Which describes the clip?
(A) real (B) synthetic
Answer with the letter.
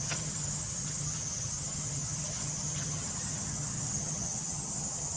B